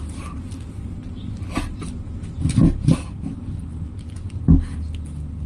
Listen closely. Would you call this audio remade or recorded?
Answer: recorded